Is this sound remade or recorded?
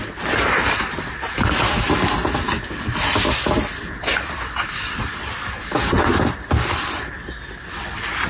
recorded